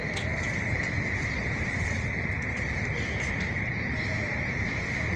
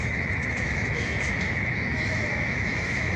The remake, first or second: second